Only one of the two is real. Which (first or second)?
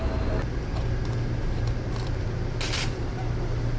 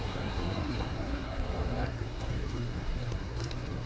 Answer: first